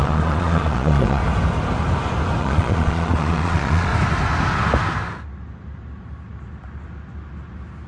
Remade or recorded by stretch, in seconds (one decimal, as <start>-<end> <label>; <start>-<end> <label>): 0.0-1.2 remade; 1.2-2.4 recorded; 2.4-3.9 remade; 3.9-7.9 recorded